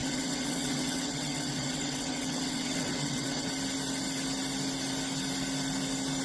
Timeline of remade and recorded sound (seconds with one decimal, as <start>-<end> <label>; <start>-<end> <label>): 0.0-3.5 remade; 3.5-6.2 recorded